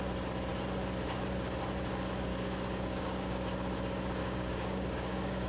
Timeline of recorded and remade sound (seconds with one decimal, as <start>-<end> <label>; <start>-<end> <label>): 0.0-2.3 recorded; 2.3-3.4 remade; 3.4-4.2 recorded; 4.2-5.5 remade